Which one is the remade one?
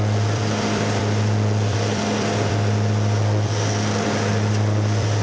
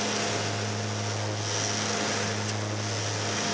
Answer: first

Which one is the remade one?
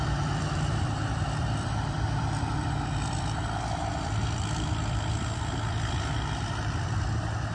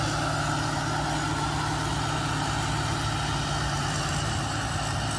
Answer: first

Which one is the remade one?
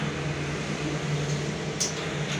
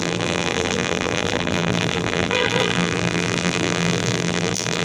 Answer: second